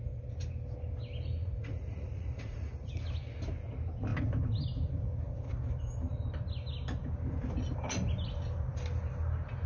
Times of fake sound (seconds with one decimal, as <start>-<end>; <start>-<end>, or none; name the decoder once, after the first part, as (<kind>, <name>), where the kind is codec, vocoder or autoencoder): 1.4-2.9 (vocoder, Vocos)